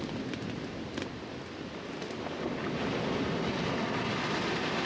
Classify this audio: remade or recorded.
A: recorded